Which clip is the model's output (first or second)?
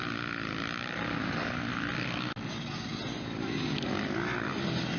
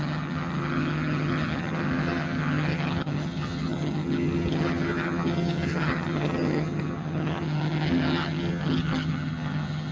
second